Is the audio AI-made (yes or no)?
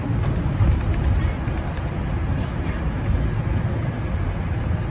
no